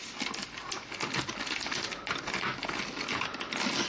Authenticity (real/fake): real